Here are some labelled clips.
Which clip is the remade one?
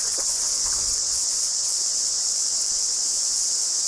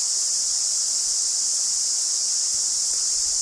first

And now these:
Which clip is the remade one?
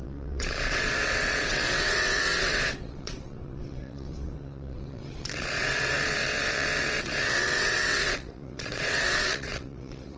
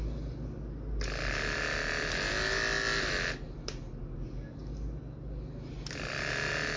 first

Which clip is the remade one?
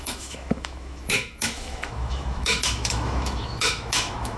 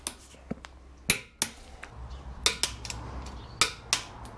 first